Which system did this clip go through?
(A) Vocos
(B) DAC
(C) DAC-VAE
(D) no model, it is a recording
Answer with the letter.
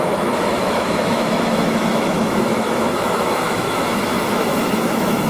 C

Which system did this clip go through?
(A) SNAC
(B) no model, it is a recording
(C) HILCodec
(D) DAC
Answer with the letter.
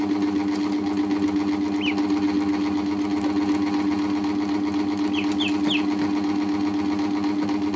B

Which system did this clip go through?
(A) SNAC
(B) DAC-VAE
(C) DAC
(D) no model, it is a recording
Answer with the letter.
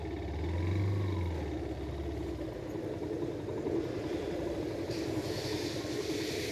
D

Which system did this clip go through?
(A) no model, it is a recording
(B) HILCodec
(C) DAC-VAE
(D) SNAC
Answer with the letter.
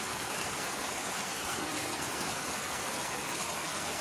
D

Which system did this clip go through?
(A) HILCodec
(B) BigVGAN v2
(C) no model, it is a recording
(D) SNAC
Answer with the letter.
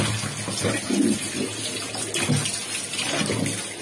C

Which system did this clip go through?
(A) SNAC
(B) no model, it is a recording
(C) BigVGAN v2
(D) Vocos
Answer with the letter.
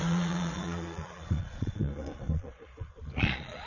D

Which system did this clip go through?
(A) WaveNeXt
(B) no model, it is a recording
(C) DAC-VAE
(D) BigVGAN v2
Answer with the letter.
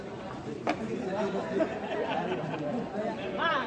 D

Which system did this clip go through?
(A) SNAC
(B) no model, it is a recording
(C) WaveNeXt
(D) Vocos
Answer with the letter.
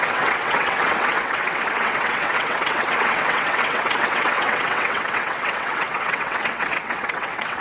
C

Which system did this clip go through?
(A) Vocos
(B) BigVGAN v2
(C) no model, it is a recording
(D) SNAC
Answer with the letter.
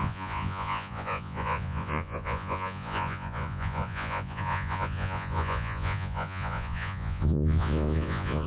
A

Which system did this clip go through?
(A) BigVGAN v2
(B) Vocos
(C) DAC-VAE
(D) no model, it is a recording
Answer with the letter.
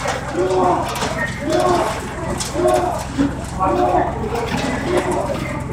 D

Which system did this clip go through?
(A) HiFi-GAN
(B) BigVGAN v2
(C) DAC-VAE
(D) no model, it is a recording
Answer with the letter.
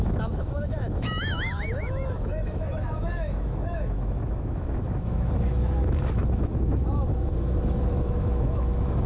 C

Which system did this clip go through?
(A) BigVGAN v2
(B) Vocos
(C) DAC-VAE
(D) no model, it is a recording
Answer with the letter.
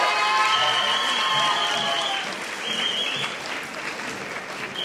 D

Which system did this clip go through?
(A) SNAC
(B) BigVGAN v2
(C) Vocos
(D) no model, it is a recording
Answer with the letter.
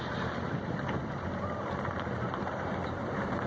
B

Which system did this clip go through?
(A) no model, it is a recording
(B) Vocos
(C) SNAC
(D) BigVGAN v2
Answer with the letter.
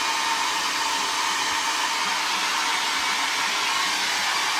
A